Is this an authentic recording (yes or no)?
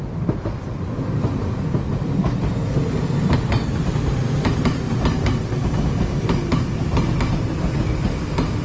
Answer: yes